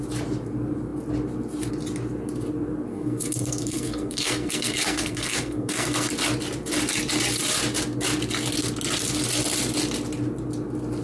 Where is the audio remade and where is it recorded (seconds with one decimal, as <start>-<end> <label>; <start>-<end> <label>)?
0.0-2.9 recorded; 2.9-6.1 remade; 6.1-11.0 recorded